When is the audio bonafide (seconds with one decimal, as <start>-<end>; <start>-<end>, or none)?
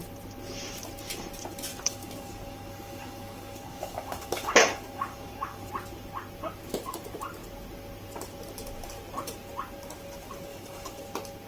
0.0-1.7; 5.7-10.5; 11.0-11.5